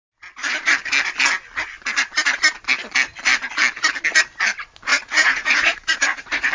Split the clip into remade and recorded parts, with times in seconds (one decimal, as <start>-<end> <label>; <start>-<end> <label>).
0.0-4.9 recorded; 4.9-6.5 remade

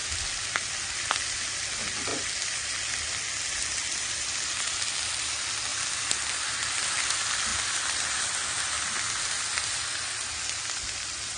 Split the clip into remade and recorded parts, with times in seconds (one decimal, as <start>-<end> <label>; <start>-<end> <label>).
0.0-11.4 recorded